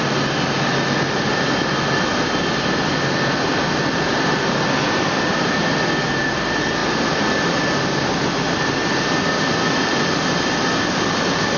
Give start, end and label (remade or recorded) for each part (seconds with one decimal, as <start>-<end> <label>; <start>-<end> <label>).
0.0-11.6 recorded